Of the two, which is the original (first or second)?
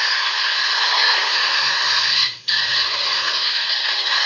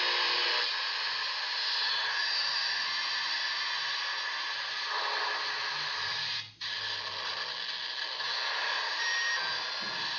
second